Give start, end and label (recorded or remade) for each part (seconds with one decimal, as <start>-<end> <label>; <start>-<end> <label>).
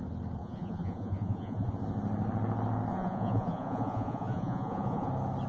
0.0-0.4 recorded; 0.4-1.7 remade; 1.7-2.9 recorded; 2.9-5.1 remade; 5.1-5.5 recorded